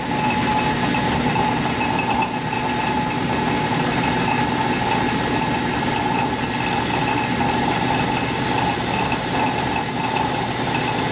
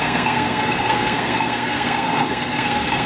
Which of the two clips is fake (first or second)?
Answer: second